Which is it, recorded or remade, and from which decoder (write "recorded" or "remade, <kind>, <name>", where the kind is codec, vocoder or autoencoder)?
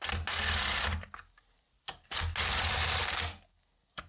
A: recorded